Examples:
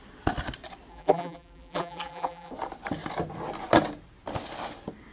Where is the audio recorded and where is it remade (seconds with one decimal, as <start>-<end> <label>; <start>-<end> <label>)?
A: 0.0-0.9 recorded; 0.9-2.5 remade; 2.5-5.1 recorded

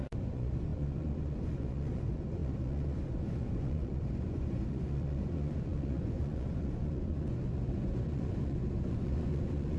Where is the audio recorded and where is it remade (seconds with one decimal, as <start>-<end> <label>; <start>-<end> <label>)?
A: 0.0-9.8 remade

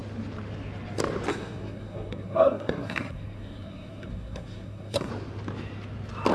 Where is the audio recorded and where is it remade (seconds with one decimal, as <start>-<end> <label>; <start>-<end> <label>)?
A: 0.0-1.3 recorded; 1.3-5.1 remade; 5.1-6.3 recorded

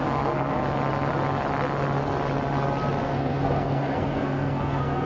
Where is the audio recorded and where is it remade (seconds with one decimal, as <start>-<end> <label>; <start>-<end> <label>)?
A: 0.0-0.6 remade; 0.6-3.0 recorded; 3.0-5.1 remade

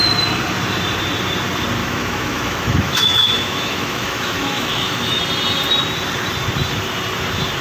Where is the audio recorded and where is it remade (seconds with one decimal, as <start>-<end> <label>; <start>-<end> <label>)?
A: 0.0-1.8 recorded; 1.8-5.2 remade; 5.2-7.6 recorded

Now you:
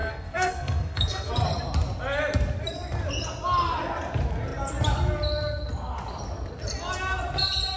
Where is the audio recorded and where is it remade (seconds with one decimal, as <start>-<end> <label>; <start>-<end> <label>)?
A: 0.0-1.3 remade; 1.3-7.8 recorded

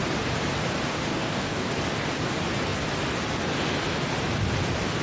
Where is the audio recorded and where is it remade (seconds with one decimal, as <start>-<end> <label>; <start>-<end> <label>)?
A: 0.0-1.1 recorded; 1.1-1.7 remade; 1.7-5.0 recorded